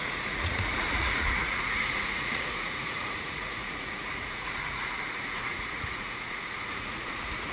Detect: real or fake fake